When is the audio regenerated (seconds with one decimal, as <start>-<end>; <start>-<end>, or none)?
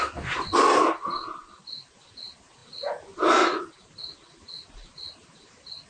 none